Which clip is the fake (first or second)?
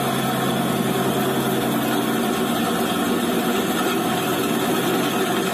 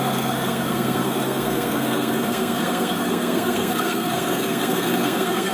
second